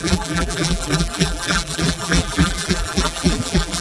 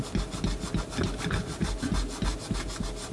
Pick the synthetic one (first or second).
first